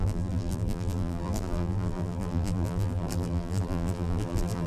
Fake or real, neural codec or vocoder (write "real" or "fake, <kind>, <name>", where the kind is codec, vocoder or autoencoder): fake, vocoder, BigVGAN v2